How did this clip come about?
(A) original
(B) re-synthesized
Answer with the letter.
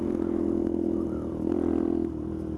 A